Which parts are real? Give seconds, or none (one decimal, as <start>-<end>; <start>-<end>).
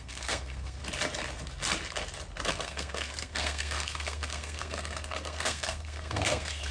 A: 0.8-2.5